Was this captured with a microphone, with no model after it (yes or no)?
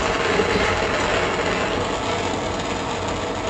yes